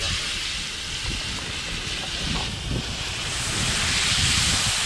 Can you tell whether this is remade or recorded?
recorded